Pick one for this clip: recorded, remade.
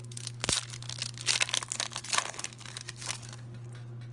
recorded